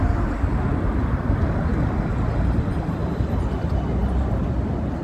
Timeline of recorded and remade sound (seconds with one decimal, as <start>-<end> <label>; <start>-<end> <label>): 0.0-5.0 recorded